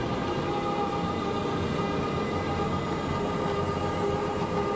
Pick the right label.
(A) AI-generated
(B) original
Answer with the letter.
B